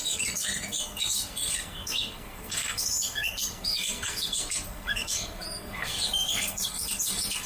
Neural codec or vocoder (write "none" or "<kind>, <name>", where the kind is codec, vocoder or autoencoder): codec, SNAC